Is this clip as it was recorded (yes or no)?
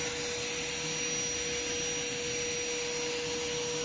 yes